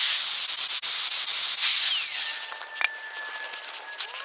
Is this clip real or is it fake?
real